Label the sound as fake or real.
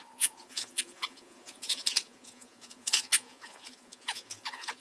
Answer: fake